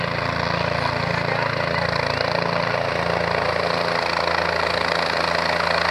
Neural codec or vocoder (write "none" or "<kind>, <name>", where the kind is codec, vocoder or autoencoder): none